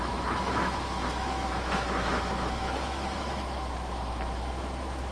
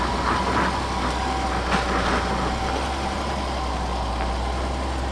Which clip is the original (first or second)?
second